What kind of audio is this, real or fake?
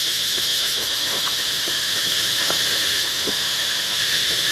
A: fake